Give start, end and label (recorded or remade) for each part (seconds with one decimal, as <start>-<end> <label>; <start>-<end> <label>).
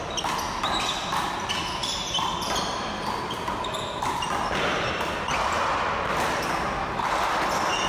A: 0.0-1.8 recorded; 1.8-2.4 remade; 2.4-7.9 recorded